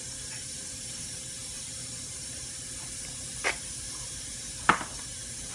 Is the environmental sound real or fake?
fake